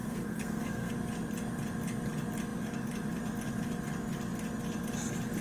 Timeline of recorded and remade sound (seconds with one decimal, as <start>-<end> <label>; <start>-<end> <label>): 0.0-0.9 remade; 0.9-5.4 recorded